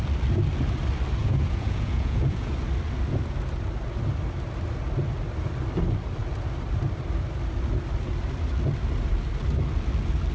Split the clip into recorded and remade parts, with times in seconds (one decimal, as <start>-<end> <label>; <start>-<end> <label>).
0.0-1.2 recorded; 1.2-2.5 remade; 2.5-10.3 recorded